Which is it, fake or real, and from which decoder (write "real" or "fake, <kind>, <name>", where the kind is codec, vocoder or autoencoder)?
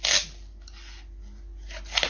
real